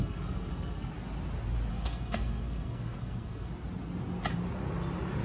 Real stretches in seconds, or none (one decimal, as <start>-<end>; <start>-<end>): 0.9-1.7; 3.5-5.2